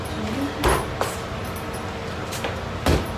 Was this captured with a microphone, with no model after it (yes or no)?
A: yes